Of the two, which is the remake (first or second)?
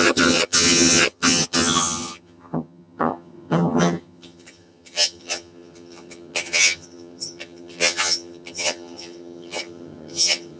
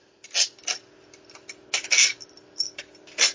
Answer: first